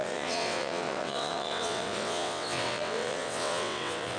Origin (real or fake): fake